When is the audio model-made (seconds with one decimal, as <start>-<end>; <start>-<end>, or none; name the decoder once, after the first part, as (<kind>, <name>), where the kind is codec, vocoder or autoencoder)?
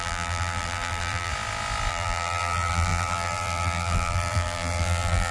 0.0-1.3 (vocoder, BigVGAN v2); 1.9-5.3